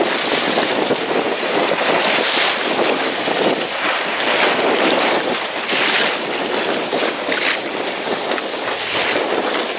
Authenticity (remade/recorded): recorded